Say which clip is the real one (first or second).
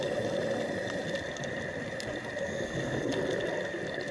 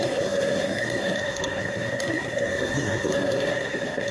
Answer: first